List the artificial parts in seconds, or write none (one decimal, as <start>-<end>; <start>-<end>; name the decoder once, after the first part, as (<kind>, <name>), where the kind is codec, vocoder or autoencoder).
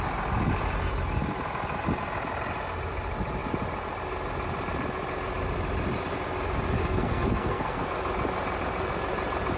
6.8-7.9 (codec, SNAC)